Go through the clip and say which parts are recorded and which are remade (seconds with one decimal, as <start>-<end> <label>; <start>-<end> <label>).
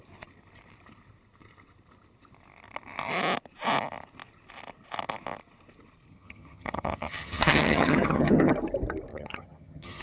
0.0-6.1 recorded; 6.1-8.5 remade; 8.5-9.1 recorded; 9.1-10.0 remade